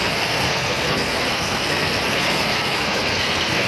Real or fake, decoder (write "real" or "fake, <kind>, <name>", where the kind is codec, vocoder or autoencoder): fake, codec, SNAC